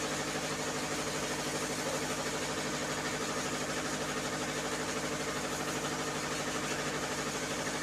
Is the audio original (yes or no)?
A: yes